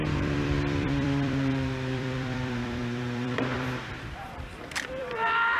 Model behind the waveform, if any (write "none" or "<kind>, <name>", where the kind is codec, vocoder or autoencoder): vocoder, BigVGAN v2